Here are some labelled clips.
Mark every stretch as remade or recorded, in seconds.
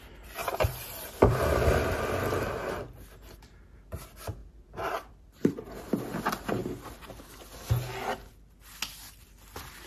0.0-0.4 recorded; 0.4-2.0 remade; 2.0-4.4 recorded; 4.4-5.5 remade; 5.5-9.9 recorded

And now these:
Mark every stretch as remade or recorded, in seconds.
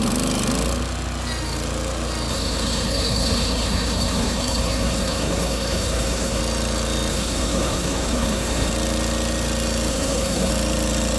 0.0-2.3 recorded; 2.3-6.4 remade; 6.4-7.1 recorded; 7.1-8.7 remade; 8.7-9.9 recorded; 9.9-10.5 remade; 10.5-11.2 recorded